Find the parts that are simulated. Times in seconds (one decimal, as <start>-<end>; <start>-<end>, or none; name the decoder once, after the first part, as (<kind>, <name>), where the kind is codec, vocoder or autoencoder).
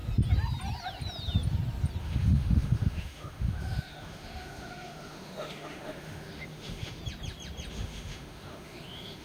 2.0-7.0 (autoencoder, DAC-VAE); 7.7-9.2